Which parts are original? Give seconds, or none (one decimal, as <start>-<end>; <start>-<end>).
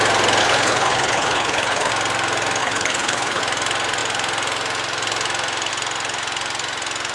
0.0-0.4; 1.9-2.6; 3.4-7.1